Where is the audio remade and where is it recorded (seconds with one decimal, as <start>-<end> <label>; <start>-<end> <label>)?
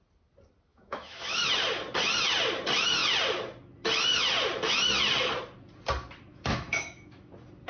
0.0-0.7 recorded; 0.7-1.5 remade; 1.5-6.3 recorded; 6.3-7.3 remade; 7.3-7.7 recorded